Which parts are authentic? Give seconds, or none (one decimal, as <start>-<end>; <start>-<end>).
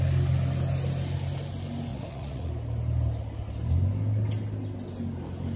0.0-1.9; 2.5-5.6